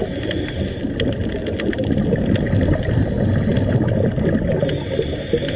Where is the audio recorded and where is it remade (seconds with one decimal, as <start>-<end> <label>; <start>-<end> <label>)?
0.0-5.6 recorded